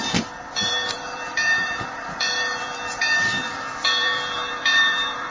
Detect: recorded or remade remade